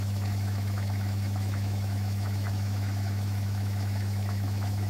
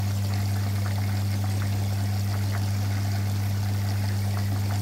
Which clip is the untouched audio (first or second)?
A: second